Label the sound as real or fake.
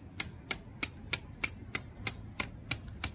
real